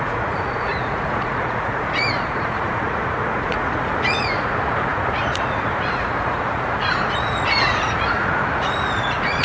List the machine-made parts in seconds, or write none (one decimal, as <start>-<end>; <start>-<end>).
0.0-9.4